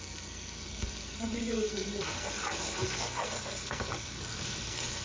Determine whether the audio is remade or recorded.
remade